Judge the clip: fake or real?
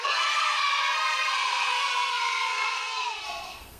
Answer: fake